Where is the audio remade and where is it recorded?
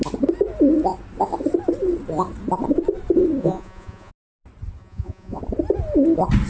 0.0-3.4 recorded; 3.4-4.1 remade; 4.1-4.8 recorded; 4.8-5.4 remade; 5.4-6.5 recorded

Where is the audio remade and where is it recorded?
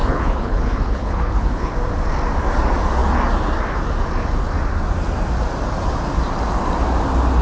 0.0-1.7 remade; 1.7-7.4 recorded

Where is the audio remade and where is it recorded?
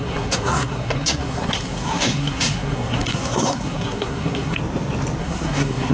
0.0-4.6 remade; 4.6-5.2 recorded; 5.2-5.9 remade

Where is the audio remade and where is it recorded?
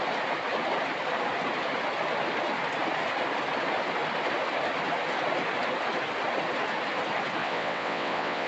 0.0-7.4 recorded; 7.4-8.5 remade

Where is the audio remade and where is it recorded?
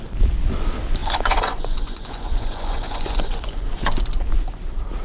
0.0-1.0 recorded; 1.0-4.0 remade; 4.0-5.0 recorded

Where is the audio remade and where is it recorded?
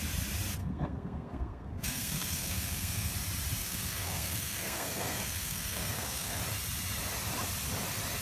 0.0-0.6 recorded; 0.6-3.1 remade; 3.1-3.6 recorded; 3.6-6.4 remade; 6.4-8.2 recorded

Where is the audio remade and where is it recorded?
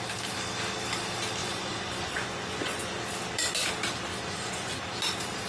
0.0-1.4 recorded; 1.4-3.0 remade; 3.0-4.1 recorded; 4.1-4.8 remade; 4.8-5.5 recorded